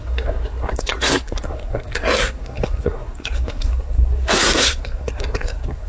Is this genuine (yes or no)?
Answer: no